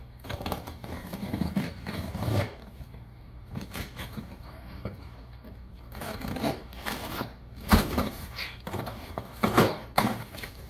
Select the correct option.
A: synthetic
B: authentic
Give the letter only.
A